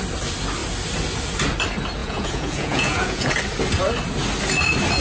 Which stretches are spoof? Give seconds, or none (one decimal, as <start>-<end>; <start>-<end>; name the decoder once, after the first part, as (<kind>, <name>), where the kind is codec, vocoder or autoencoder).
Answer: 2.0-3.3 (vocoder, Vocos)